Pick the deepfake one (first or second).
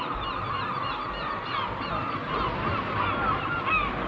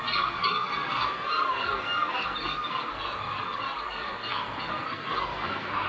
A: second